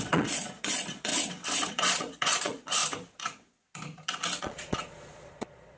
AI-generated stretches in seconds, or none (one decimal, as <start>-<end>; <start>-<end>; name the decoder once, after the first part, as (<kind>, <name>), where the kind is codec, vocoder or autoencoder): 0.0-1.1 (vocoder, Vocos); 1.7-2.8; 4.4-5.8